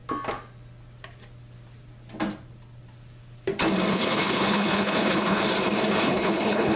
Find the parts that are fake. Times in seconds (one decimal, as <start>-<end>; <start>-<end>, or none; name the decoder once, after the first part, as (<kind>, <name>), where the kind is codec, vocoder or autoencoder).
3.9-5.4 (codec, HILCodec); 6.0-6.8